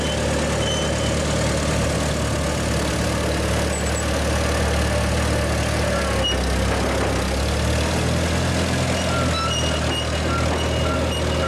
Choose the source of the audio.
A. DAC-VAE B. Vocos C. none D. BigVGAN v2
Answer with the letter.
C